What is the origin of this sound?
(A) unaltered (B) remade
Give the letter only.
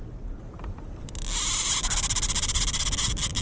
A